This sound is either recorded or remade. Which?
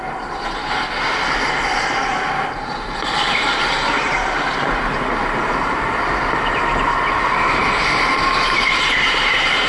recorded